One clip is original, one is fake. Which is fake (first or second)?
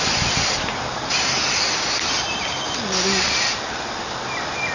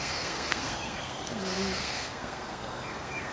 second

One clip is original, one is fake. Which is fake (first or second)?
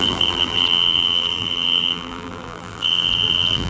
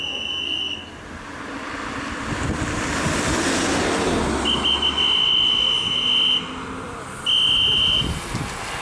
first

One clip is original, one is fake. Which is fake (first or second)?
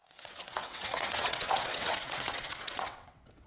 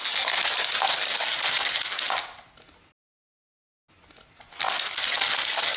first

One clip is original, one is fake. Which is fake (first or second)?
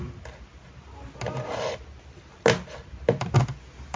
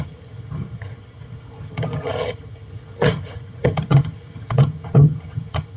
second